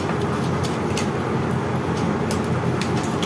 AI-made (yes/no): no